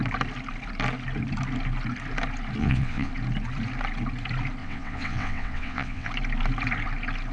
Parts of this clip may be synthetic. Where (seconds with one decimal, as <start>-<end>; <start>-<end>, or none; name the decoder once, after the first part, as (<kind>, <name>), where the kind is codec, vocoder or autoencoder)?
2.6-3.1 (vocoder, WaveNeXt); 4.6-6.1

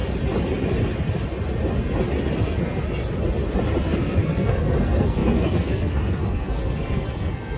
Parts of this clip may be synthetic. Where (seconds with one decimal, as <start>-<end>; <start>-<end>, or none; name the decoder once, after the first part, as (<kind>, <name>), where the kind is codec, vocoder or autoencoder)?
2.4-2.8 (codec, SNAC); 3.8-7.6

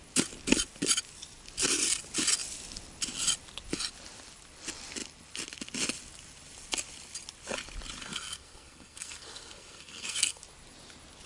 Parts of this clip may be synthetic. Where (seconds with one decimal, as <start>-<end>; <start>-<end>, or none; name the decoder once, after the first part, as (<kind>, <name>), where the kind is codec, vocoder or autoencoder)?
8.0-10.4 (codec, SNAC)

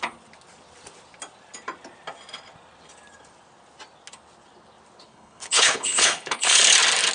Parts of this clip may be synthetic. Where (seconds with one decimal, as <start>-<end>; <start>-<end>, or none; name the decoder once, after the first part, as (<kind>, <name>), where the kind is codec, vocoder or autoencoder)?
5.0-6.6 (codec, HILCodec)